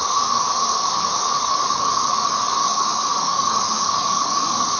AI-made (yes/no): yes